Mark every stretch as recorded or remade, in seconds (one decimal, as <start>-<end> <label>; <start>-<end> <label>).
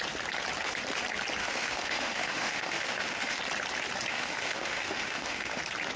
0.0-1.4 recorded; 1.4-3.4 remade; 3.4-4.1 recorded; 4.1-5.6 remade; 5.6-6.0 recorded